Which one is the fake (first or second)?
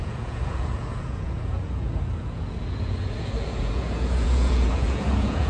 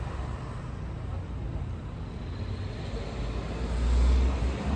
first